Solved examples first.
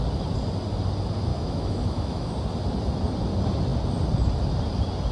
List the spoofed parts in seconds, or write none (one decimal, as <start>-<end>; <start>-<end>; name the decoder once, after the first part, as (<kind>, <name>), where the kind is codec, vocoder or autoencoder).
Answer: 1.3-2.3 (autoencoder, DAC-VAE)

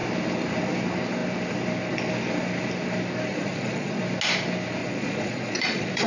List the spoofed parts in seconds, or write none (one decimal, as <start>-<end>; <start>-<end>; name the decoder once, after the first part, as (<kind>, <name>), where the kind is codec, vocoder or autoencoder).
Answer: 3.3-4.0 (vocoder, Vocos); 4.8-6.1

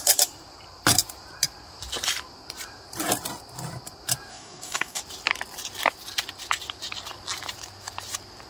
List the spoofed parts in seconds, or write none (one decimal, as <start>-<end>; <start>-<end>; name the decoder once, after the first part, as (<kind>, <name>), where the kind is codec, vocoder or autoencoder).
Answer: 4.3-5.0 (codec, DAC)